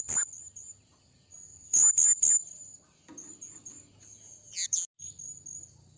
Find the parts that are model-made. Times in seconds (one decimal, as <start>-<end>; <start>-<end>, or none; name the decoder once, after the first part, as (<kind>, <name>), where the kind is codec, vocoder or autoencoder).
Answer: none